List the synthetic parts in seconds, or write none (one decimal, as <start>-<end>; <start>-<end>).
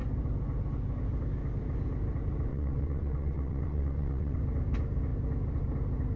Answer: 2.5-4.4